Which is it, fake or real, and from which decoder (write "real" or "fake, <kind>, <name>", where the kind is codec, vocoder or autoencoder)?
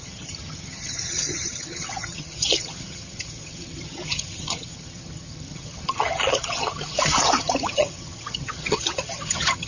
fake, vocoder, HiFi-GAN